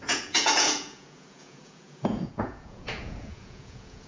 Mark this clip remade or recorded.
remade